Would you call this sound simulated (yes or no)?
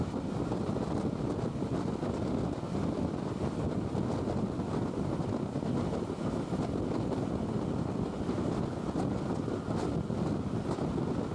no